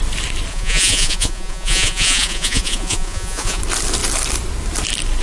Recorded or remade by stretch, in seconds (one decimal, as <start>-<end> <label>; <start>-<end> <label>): 0.0-0.5 recorded; 0.5-3.6 remade; 3.6-5.2 recorded